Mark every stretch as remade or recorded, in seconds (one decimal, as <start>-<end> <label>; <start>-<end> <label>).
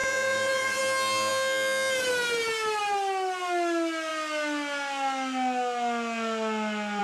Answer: 0.0-0.8 remade; 0.8-7.0 recorded